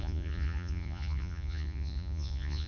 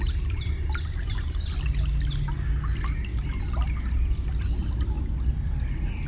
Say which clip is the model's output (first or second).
first